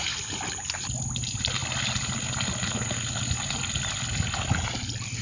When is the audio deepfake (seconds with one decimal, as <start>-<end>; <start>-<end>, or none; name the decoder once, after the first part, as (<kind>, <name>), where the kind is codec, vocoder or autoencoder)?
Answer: none